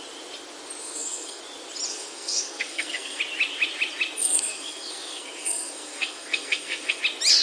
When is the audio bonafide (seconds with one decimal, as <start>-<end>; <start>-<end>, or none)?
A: 0.0-0.8; 1.4-1.9; 3.2-4.2; 7.0-7.4